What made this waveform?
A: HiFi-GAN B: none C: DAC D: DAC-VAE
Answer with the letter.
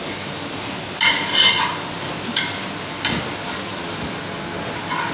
B